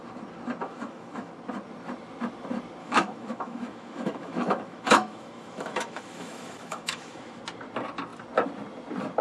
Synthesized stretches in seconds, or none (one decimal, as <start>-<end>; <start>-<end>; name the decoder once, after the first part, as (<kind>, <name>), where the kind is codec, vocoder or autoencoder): 0.6-1.3 (autoencoder, DAC-VAE); 2.8-7.4